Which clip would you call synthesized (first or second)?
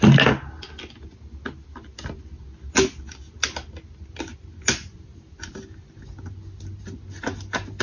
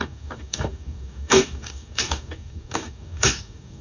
second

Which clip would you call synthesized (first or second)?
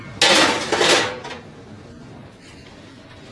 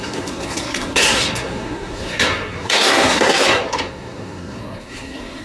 second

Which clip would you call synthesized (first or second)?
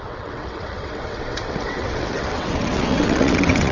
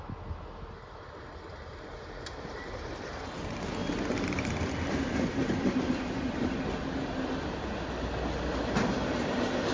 first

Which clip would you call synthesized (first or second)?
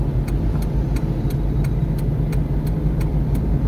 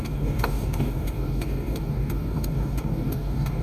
second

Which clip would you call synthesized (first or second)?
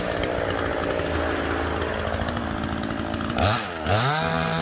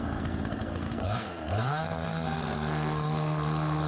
second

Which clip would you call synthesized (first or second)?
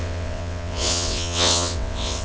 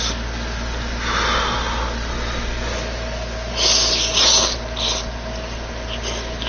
first